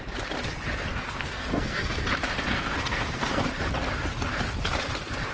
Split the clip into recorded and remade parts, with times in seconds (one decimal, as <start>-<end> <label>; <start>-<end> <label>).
0.0-0.9 recorded; 0.9-2.0 remade; 2.0-2.5 recorded; 2.5-3.4 remade; 3.4-5.3 recorded